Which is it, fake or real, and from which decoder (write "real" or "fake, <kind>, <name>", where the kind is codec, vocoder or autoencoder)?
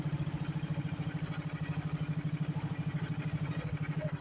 real